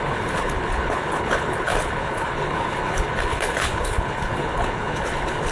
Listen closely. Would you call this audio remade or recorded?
remade